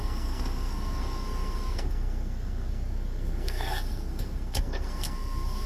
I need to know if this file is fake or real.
fake